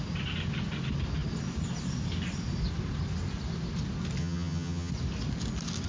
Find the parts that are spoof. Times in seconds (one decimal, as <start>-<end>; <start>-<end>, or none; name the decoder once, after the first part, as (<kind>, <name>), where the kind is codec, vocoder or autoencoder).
4.2-4.9 (vocoder, HiFi-GAN)